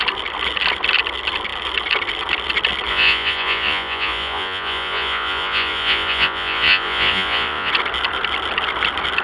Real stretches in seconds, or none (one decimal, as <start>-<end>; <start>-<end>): 0.0-2.9; 7.7-9.2